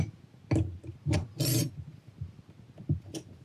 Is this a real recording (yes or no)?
yes